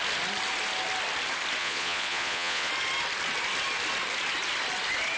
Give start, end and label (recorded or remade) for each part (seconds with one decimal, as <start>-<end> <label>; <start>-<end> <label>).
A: 0.0-1.6 recorded; 1.6-2.7 remade; 2.7-5.2 recorded